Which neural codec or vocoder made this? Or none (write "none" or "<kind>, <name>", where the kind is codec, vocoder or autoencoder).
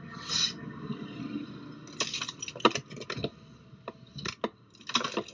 none